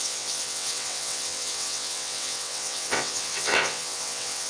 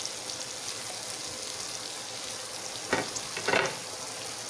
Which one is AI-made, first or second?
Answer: first